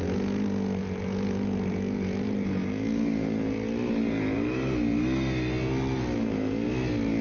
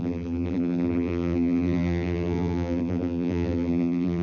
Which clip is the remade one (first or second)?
second